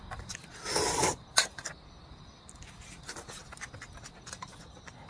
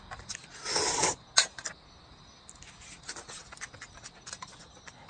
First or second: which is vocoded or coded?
first